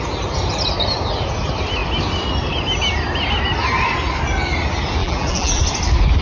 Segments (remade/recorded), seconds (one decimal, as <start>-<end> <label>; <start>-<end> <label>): 0.0-5.0 recorded; 5.0-5.6 remade; 5.6-6.2 recorded